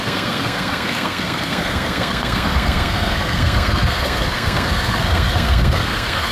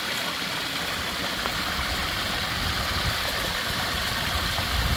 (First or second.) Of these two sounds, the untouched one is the second